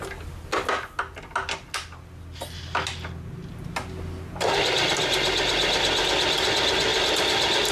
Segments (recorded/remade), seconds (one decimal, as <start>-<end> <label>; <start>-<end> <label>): 0.0-7.7 recorded